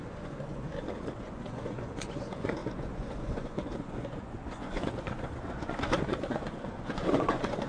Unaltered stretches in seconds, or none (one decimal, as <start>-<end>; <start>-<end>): none